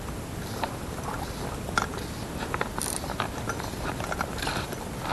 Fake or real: real